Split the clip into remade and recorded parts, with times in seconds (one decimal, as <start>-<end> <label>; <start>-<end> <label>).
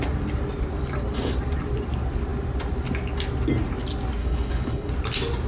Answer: 0.0-4.2 recorded; 4.2-4.9 remade; 4.9-5.5 recorded